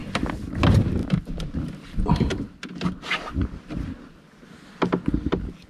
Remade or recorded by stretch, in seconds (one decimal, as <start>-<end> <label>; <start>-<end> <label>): 0.0-0.6 remade; 0.6-1.0 recorded; 1.0-2.7 remade; 2.7-5.7 recorded